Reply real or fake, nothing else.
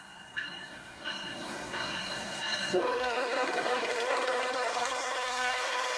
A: fake